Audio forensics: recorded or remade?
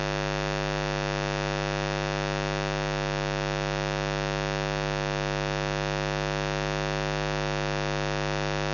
recorded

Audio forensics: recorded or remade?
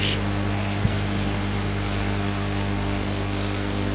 remade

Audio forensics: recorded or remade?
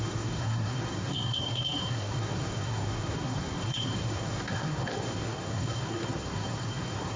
remade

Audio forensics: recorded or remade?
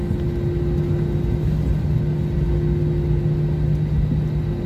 recorded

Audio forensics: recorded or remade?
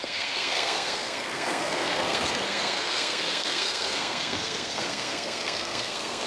remade